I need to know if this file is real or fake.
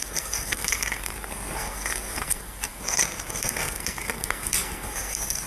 fake